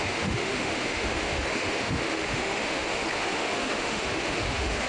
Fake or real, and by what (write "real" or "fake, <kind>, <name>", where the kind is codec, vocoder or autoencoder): fake, autoencoder, DAC-VAE